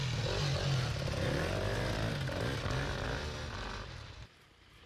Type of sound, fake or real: real